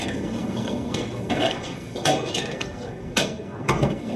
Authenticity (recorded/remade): remade